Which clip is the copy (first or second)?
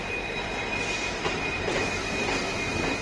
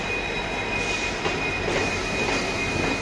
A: first